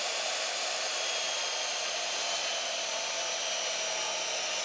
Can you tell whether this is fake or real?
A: real